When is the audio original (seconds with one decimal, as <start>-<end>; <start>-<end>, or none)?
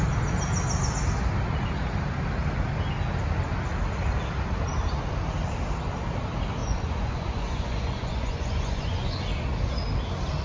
0.0-6.6; 9.2-10.4